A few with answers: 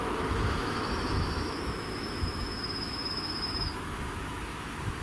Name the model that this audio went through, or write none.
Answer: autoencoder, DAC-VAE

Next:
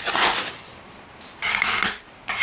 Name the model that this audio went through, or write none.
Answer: none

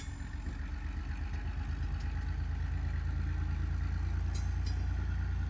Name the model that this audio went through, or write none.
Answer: none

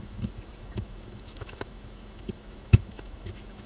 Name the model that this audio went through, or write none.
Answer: autoencoder, DAC-VAE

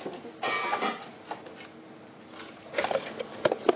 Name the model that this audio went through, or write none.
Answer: none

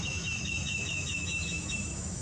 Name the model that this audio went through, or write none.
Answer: autoencoder, DAC-VAE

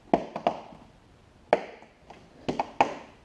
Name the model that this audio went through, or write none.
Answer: none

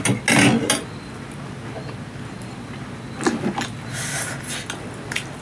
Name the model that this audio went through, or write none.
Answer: none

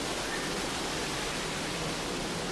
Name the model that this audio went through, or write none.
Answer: none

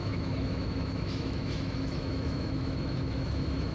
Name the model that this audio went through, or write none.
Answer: autoencoder, DAC-VAE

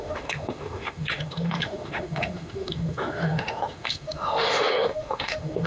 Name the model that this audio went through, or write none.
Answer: autoencoder, DAC-VAE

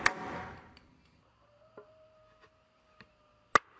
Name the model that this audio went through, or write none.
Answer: none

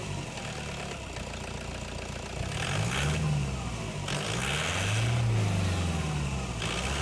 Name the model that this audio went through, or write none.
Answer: none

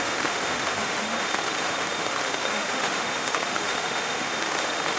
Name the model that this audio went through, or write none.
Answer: autoencoder, DAC-VAE